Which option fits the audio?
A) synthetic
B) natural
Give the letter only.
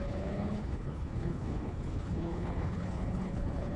A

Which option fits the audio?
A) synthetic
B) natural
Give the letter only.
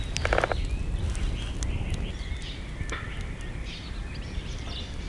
B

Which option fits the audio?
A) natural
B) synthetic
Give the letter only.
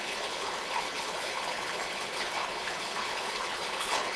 B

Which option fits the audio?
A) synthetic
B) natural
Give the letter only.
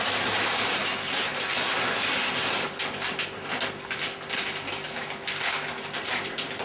B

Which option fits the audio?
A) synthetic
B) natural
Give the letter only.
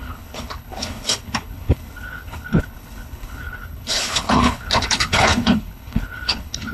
A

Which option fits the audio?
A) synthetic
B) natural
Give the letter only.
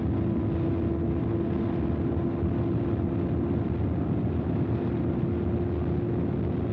B